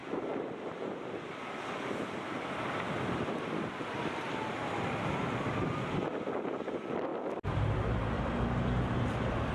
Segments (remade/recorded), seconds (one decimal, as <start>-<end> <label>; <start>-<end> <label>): 0.0-2.1 remade; 2.1-7.1 recorded; 7.1-9.5 remade